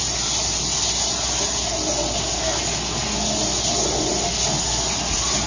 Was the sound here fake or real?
real